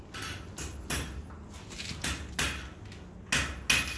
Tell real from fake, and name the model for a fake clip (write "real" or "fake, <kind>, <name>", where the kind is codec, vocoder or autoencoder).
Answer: real